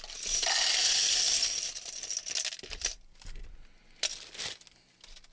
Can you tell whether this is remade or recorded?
recorded